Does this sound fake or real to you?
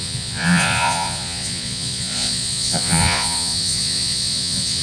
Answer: fake